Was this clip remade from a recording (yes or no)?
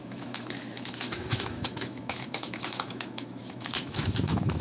yes